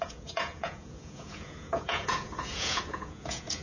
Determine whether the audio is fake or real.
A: fake